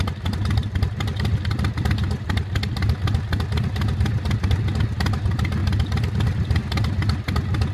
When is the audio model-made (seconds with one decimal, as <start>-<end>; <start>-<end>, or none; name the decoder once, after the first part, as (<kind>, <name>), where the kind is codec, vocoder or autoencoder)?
none